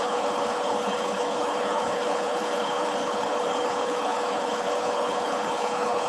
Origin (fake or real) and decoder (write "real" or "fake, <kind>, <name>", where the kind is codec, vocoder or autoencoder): fake, codec, HILCodec